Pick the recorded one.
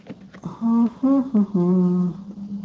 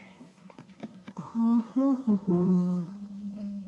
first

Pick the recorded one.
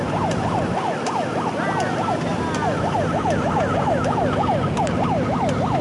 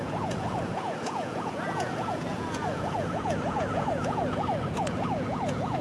first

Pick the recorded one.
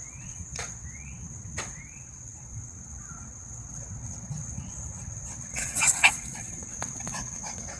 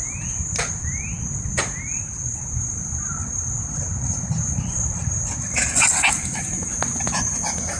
second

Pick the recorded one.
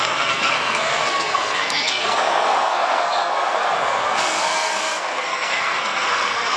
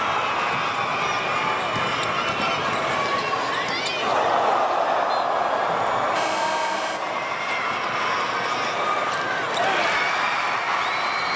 second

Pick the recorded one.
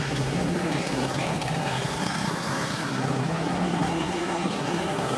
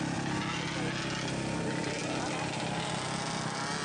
second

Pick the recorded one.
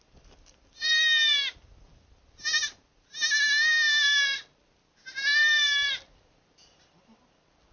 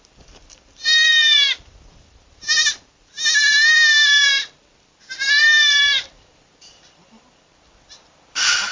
first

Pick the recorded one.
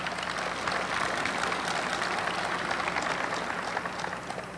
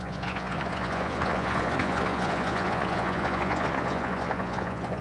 first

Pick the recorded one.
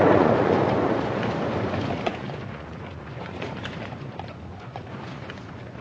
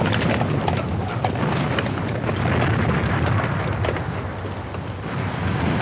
second